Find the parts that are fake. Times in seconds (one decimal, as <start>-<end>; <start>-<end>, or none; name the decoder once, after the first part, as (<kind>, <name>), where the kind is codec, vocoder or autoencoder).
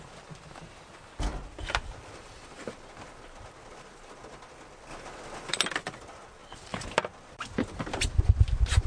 none